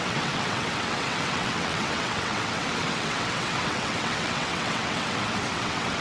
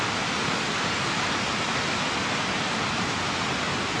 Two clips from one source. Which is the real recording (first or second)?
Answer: second